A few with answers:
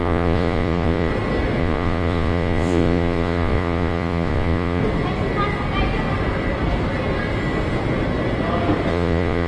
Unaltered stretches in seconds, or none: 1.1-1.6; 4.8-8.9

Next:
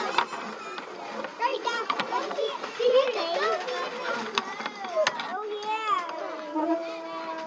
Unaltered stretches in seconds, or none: 0.0-1.5; 3.2-7.5